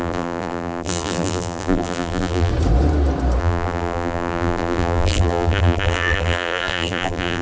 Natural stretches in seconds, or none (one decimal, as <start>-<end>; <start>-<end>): 2.5-3.4

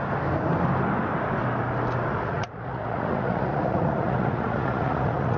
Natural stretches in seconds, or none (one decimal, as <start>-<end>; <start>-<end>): 0.0-2.1

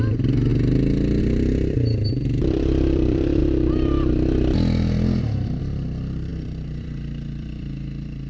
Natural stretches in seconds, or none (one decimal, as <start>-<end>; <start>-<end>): 0.5-1.2; 3.4-5.6

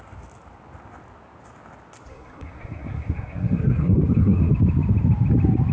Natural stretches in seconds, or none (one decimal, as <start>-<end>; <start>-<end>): 0.0-2.1; 4.5-5.7

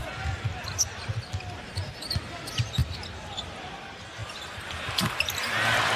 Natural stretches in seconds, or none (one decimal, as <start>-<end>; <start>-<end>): 0.0-6.0

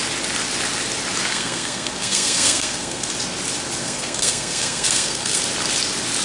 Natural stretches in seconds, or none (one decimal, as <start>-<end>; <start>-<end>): 0.0-1.3; 3.1-3.8; 5.4-6.2